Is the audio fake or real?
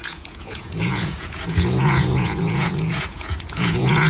fake